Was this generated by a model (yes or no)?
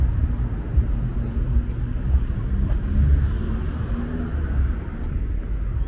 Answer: no